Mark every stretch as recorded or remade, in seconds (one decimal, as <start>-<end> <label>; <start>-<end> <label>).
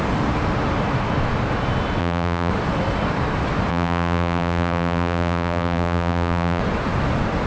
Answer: 0.0-2.0 recorded; 2.0-2.5 remade; 2.5-3.7 recorded; 3.7-6.6 remade; 6.6-7.5 recorded